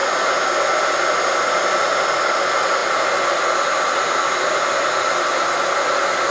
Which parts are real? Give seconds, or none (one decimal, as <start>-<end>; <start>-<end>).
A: 0.0-6.3